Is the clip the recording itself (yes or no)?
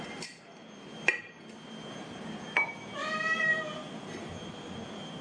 yes